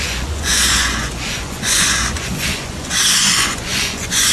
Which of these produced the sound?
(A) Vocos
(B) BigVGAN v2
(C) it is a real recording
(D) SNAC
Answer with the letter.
A